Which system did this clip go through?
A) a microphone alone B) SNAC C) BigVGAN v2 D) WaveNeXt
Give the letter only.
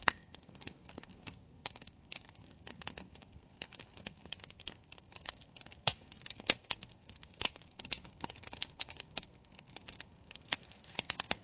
B